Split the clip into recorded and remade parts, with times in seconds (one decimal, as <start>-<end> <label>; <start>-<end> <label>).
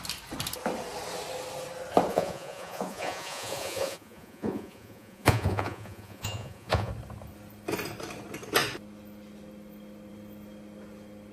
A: 0.0-2.1 recorded; 2.1-6.9 remade; 6.9-11.3 recorded